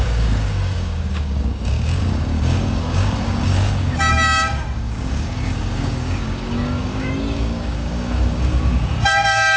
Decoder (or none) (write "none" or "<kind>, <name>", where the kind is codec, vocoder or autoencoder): codec, DAC